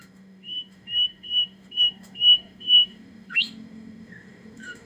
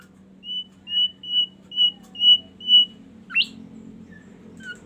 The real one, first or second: second